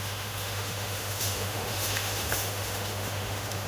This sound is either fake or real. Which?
fake